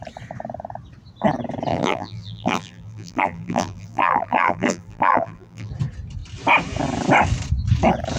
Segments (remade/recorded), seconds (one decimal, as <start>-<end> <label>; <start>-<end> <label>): 0.0-1.7 recorded; 1.7-5.7 remade; 5.7-8.2 recorded